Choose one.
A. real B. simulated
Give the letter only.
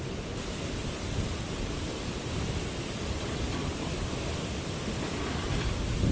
A